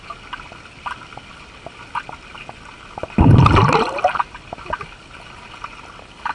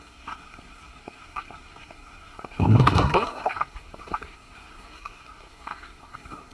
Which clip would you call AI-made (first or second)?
second